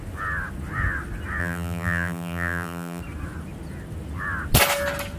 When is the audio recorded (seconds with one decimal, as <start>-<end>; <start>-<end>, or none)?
0.0-1.4; 3.0-5.2